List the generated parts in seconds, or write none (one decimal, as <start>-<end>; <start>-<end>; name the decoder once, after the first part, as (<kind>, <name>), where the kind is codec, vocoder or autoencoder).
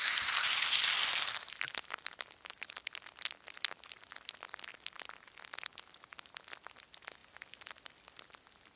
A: none